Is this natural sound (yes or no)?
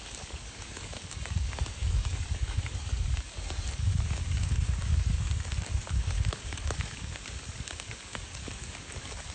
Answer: no